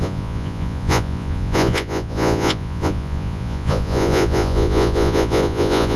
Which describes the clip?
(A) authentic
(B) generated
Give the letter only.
B